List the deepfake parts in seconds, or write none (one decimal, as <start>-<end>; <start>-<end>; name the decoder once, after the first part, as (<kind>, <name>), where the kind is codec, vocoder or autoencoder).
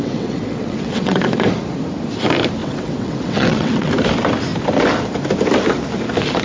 0.0-1.2 (vocoder, WaveNeXt); 2.6-3.9